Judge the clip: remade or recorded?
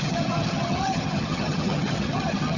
remade